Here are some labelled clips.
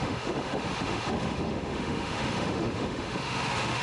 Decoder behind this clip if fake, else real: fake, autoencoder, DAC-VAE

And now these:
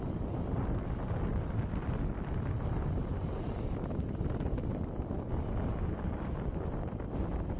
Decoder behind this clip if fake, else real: real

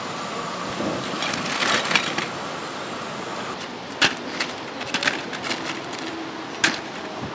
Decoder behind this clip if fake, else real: real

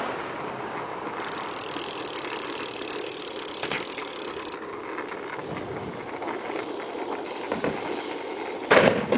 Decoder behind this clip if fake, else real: real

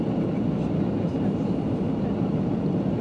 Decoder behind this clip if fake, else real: real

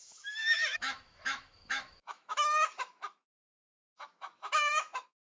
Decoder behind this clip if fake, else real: fake, autoencoder, DAC-VAE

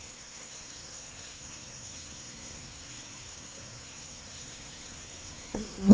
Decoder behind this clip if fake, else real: fake, codec, SNAC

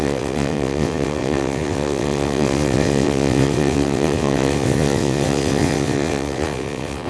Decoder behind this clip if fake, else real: fake, vocoder, WaveNeXt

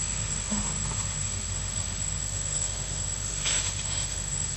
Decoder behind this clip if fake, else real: fake, autoencoder, DAC-VAE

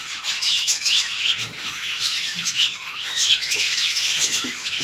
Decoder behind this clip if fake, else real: fake, autoencoder, DAC-VAE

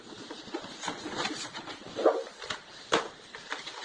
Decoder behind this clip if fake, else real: real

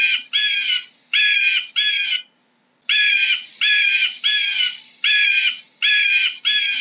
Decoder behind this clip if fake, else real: real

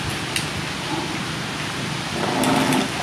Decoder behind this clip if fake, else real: real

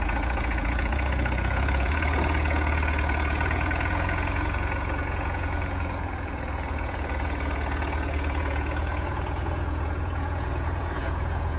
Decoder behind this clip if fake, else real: fake, vocoder, Vocos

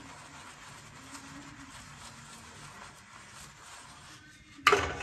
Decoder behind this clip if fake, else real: real